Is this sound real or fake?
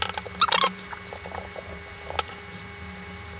real